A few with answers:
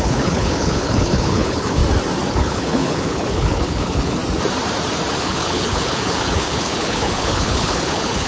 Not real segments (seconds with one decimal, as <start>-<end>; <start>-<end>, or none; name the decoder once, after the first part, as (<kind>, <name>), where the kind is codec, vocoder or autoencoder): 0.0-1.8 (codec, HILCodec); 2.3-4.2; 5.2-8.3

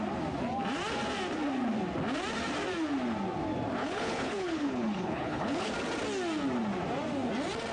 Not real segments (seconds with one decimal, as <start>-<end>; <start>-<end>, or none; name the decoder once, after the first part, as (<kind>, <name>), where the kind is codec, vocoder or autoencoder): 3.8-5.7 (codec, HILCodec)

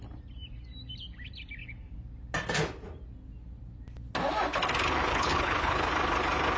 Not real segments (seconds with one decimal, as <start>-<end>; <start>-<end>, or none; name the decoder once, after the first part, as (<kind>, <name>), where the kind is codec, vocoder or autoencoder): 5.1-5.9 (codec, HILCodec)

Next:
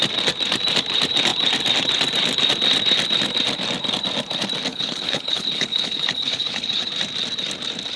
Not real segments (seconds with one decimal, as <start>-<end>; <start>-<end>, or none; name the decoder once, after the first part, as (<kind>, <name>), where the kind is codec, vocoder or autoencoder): 4.7-6.9 (codec, HILCodec)